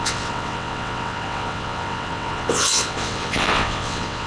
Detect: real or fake fake